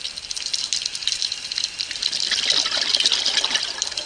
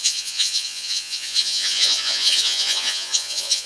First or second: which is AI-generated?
second